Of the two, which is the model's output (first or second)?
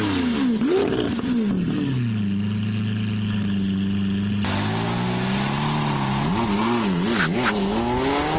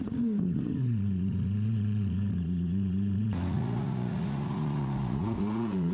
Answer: second